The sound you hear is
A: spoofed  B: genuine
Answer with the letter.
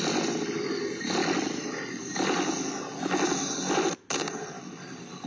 B